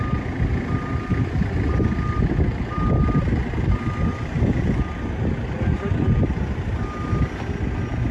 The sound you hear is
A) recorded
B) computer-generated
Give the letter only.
A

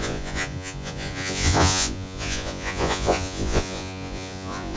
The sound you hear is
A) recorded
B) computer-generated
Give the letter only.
B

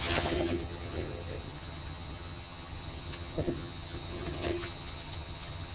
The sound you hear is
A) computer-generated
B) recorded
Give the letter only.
A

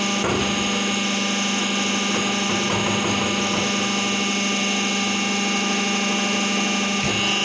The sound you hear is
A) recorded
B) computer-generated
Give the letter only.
A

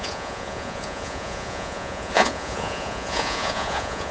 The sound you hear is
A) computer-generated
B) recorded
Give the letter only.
A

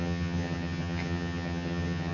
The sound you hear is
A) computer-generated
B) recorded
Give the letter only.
A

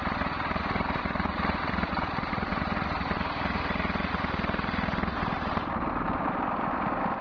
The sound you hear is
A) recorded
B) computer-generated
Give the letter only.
A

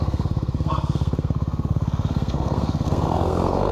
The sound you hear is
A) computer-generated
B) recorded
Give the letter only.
A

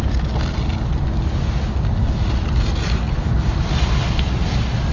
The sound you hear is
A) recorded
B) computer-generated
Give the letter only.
A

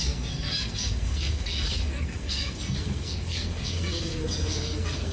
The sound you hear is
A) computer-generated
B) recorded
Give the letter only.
A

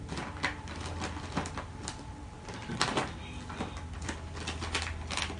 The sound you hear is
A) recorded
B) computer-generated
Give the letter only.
A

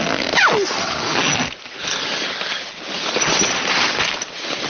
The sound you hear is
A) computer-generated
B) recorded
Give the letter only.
B